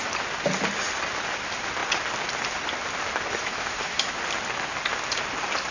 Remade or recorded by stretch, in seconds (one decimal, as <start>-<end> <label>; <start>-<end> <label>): 0.0-3.5 recorded; 3.5-4.2 remade; 4.2-5.7 recorded